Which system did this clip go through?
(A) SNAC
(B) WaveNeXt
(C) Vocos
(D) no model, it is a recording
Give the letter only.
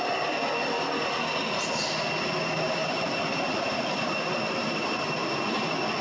D